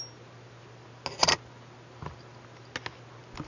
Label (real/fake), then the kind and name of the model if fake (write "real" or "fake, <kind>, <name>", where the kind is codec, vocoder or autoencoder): real